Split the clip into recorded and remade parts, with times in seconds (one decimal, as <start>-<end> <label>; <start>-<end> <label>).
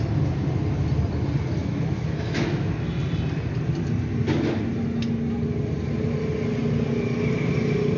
0.0-1.6 recorded; 1.6-2.7 remade; 2.7-8.0 recorded